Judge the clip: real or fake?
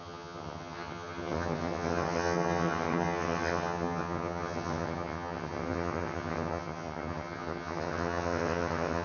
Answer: fake